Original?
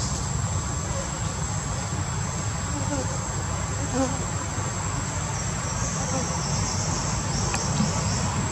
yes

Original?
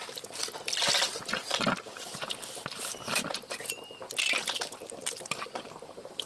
yes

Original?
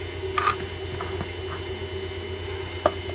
yes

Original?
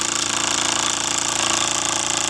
yes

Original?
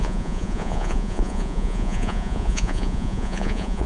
no